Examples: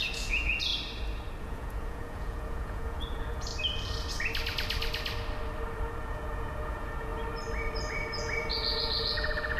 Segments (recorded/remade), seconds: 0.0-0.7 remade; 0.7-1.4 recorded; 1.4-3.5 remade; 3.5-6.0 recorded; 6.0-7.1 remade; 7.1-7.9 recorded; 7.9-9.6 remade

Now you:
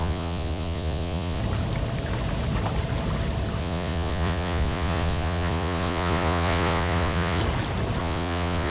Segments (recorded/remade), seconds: 0.0-1.4 remade; 1.4-3.6 recorded; 3.6-7.4 remade; 7.4-8.0 recorded; 8.0-8.7 remade

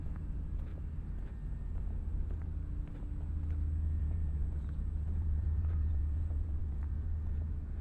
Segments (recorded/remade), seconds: 0.0-0.7 remade; 0.7-4.0 recorded; 4.0-7.8 remade

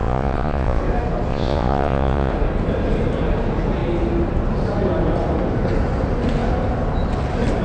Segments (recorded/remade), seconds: 0.0-0.8 remade; 0.8-1.3 recorded; 1.3-2.3 remade; 2.3-7.6 recorded

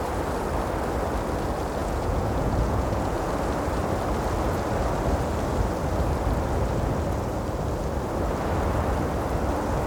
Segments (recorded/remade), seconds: 0.0-1.8 recorded; 1.8-3.3 remade; 3.3-9.9 recorded

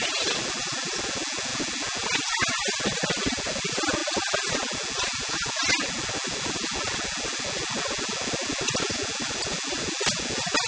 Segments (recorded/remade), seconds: 0.0-10.7 recorded